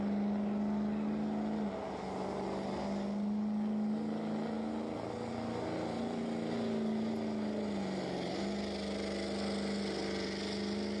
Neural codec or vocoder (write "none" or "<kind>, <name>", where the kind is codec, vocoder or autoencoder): none